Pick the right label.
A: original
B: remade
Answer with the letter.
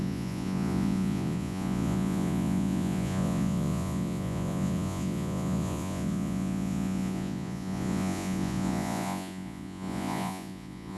B